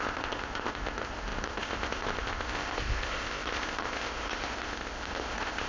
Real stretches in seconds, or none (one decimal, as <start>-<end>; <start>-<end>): none